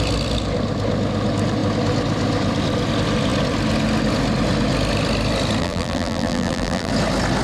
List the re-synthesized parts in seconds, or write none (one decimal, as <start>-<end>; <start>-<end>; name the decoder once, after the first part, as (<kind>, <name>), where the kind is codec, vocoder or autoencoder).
5.6-6.9 (vocoder, BigVGAN v2)